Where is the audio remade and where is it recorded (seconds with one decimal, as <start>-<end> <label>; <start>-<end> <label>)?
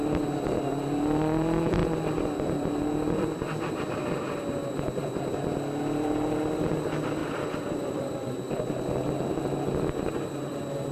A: 0.0-7.2 recorded; 7.2-8.3 remade; 8.3-10.9 recorded